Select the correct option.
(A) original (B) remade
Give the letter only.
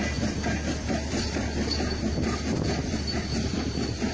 B